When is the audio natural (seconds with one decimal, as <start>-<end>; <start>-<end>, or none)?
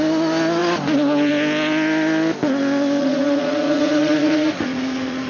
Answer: 0.0-3.0